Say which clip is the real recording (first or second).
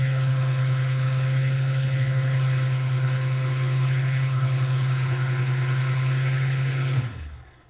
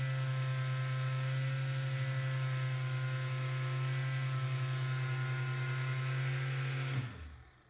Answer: second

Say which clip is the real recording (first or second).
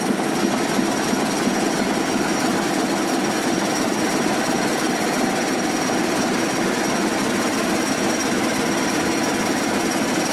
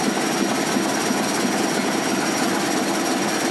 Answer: second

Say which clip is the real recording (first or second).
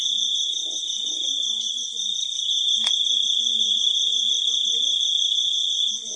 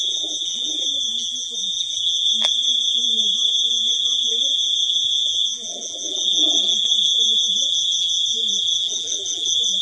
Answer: first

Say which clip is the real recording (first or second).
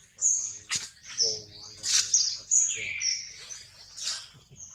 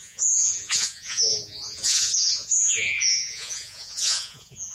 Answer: first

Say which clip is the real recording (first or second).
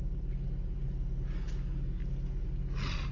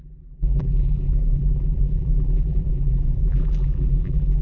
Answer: first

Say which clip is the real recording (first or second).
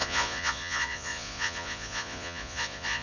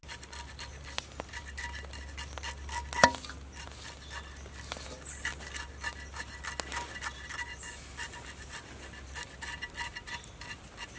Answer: second